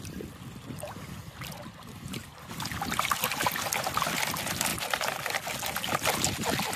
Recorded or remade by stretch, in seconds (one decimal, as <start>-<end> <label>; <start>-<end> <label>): 0.0-6.8 recorded